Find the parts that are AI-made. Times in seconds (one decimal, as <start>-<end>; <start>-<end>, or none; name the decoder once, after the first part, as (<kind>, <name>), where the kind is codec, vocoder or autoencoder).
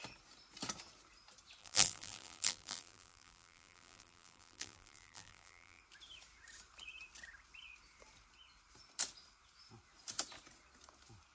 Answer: 1.6-5.8 (vocoder, BigVGAN v2)